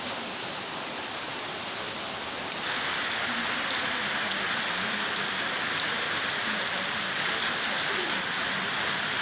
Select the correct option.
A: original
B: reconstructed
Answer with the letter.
A